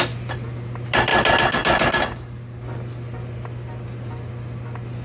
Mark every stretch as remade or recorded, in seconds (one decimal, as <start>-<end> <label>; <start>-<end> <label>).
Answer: 0.0-5.0 recorded